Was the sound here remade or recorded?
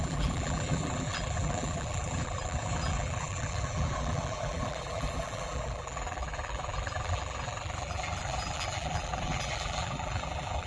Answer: remade